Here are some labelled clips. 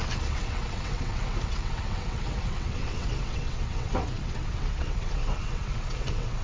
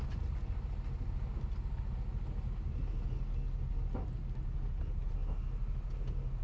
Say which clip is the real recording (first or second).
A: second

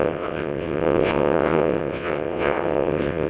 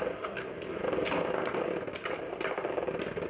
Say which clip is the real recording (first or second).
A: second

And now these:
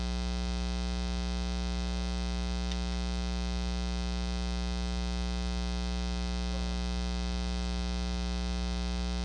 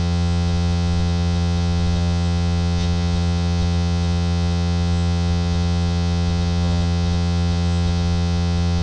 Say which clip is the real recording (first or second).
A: first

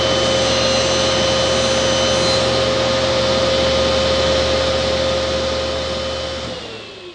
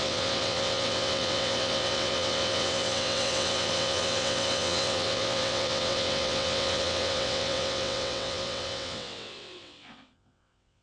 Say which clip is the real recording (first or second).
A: first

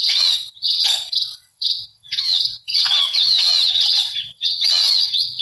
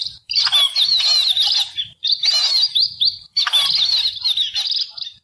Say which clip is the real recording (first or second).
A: second